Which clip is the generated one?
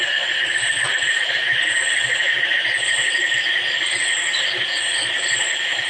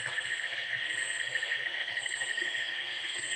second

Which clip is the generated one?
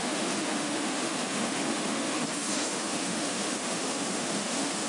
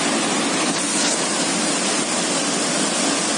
first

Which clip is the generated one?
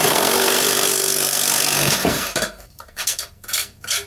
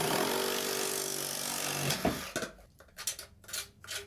first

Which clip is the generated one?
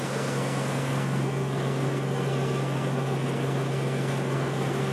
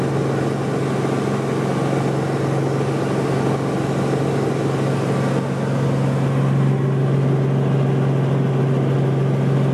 first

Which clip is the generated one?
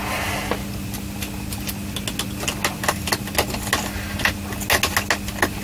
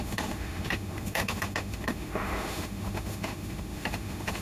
second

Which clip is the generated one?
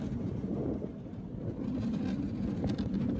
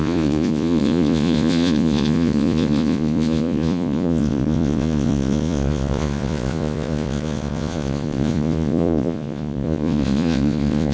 second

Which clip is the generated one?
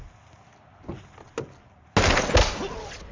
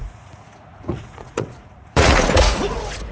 second